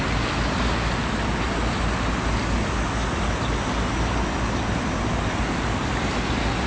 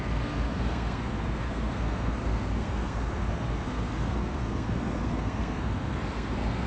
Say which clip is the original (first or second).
first